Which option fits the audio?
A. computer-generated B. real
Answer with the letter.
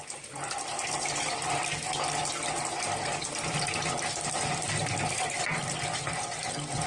B